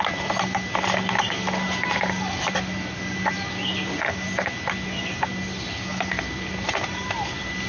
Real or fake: real